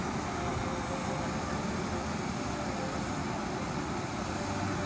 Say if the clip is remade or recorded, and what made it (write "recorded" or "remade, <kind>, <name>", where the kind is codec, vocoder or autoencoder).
recorded